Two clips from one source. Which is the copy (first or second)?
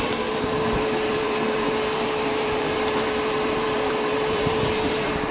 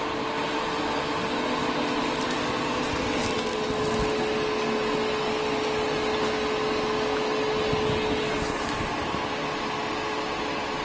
first